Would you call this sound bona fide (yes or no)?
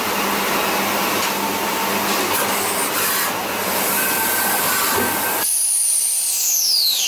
yes